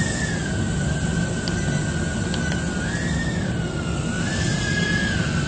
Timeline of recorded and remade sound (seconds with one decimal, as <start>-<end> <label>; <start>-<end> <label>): 0.0-5.5 recorded